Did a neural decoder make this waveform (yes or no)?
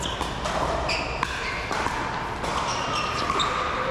no